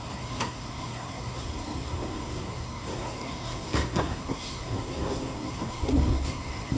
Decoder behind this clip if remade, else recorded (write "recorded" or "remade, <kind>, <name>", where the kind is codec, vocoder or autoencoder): remade, codec, SNAC